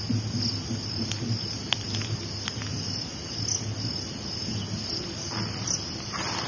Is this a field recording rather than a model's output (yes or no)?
yes